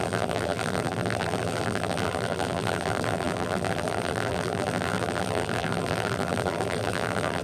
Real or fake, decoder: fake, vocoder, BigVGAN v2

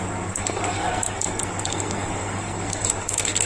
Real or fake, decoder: fake, codec, SNAC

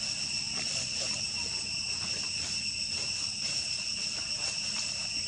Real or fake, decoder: real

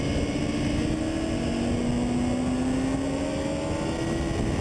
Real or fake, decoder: real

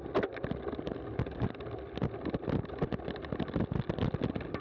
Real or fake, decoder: real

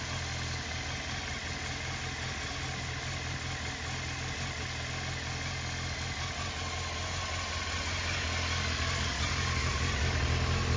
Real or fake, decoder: real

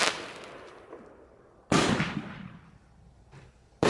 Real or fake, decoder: fake, vocoder, BigVGAN v2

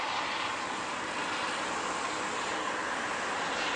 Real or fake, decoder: real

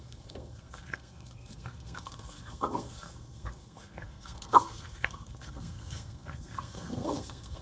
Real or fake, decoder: fake, codec, SNAC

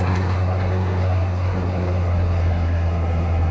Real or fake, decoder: fake, codec, SNAC